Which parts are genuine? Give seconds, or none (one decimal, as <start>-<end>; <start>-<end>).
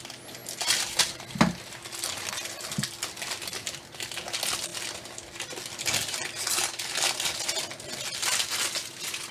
0.0-9.3